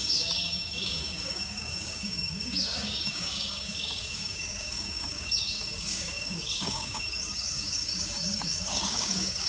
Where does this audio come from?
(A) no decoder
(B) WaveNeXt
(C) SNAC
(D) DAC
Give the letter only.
D